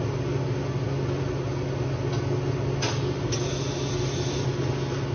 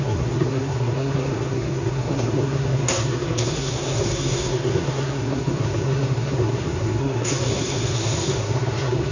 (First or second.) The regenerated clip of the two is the second